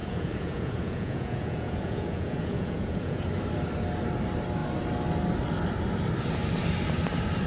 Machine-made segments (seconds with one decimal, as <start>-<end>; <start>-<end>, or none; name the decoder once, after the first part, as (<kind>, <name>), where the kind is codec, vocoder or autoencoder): 0.0-3.3 (vocoder, Vocos)

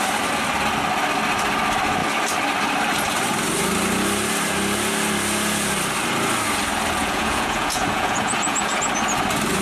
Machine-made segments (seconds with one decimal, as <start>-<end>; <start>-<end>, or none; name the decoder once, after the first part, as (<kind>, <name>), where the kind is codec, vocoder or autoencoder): 7.0-8.9 (vocoder, Vocos)

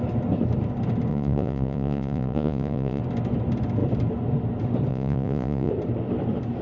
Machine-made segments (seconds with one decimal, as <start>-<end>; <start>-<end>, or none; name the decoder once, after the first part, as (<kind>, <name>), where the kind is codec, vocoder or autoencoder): 1.1-3.0 (vocoder, Vocos); 4.9-5.7

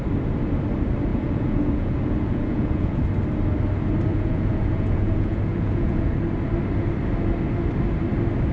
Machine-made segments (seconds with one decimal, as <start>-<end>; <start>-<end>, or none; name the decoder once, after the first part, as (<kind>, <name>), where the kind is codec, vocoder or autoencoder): 1.1-3.0 (vocoder, Vocos); 4.1-6.1

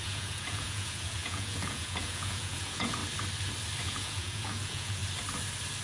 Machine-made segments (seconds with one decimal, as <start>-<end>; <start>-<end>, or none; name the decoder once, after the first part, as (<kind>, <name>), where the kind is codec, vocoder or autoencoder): 0.0-3.0 (vocoder, Vocos); 3.8-5.0

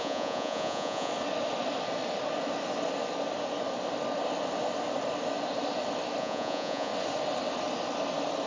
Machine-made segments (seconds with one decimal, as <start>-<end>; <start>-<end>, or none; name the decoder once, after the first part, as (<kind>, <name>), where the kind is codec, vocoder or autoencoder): 0.0-1.1 (vocoder, Vocos); 6.2-6.9

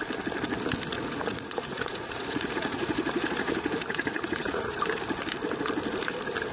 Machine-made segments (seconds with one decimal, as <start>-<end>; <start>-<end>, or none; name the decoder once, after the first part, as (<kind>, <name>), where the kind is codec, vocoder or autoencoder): 0.9-4.8 (vocoder, Vocos)

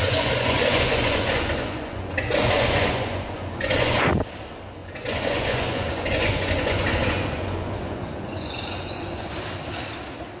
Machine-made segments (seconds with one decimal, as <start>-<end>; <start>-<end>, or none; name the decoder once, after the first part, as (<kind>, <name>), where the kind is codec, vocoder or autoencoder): 0.0-4.1 (vocoder, Vocos); 4.8-9.3